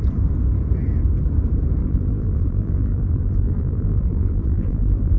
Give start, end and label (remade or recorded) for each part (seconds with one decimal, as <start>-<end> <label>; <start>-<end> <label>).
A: 0.0-1.8 recorded; 1.8-5.2 remade